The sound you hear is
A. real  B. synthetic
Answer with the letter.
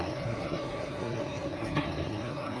B